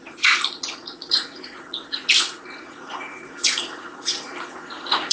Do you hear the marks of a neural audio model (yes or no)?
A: yes